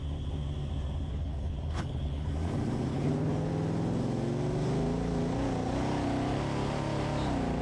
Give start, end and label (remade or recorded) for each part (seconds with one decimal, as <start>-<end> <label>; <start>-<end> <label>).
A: 0.0-1.1 recorded; 1.1-2.3 remade; 2.3-2.9 recorded; 2.9-3.5 remade; 3.5-7.6 recorded